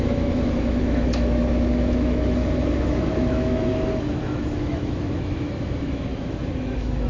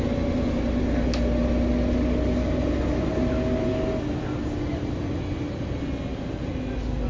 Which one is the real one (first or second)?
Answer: second